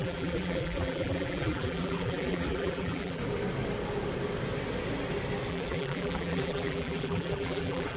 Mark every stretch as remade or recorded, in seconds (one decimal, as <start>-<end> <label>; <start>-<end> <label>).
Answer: 0.0-3.2 remade; 3.2-5.5 recorded; 5.5-8.0 remade